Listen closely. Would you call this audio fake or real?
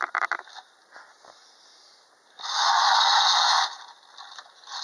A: real